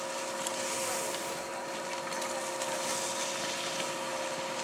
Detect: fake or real real